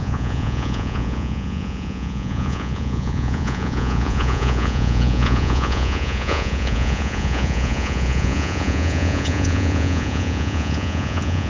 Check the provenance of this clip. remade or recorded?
remade